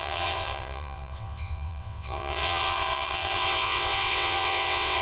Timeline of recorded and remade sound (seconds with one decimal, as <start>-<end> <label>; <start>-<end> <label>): 0.0-5.0 remade